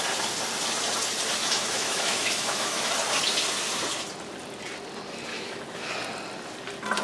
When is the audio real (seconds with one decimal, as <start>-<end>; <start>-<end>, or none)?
0.0-1.4; 2.9-5.3; 5.9-7.0